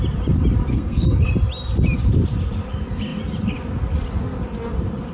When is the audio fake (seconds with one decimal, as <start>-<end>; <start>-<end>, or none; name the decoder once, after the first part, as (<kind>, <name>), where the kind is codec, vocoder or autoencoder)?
0.7-1.3 (codec, SNAC)